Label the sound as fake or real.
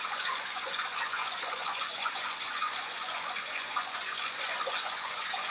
fake